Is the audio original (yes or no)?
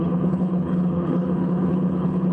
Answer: no